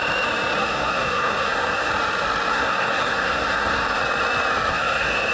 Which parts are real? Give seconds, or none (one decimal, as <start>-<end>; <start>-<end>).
0.0-0.6; 1.9-2.5; 4.0-4.7